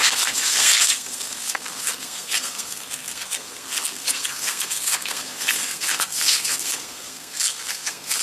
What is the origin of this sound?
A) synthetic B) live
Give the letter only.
A